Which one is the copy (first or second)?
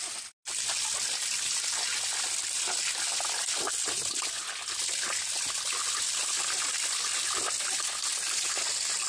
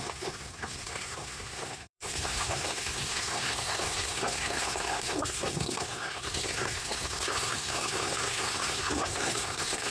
second